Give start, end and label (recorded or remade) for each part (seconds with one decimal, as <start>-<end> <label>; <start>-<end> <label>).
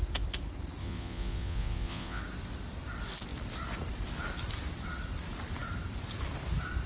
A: 0.0-0.8 recorded; 0.8-2.2 remade; 2.2-6.9 recorded